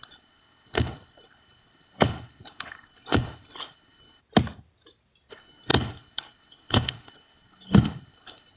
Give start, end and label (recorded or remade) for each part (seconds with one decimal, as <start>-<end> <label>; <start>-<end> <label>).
0.0-4.2 remade; 4.2-5.3 recorded; 5.3-8.6 remade